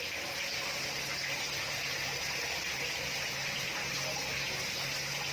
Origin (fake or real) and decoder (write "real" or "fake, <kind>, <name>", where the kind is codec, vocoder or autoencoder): real